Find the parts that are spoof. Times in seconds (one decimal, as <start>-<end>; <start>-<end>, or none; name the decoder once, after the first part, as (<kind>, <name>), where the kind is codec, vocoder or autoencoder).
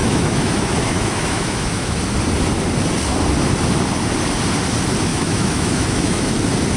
0.0-2.0 (autoencoder, DAC-VAE); 5.1-6.3